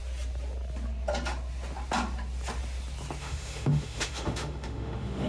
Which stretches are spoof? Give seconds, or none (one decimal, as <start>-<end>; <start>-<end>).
3.2-5.3